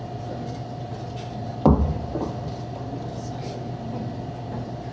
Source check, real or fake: real